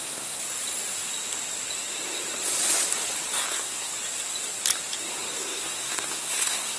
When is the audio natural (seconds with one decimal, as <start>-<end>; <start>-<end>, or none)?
0.4-3.5; 3.9-5.3